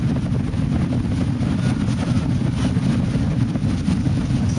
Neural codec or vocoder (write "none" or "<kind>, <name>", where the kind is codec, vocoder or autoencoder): none